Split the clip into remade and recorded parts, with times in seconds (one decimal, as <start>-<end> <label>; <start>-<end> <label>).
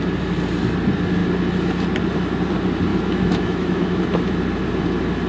0.0-2.9 recorded; 2.9-4.0 remade; 4.0-5.3 recorded